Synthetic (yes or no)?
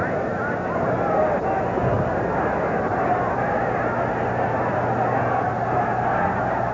no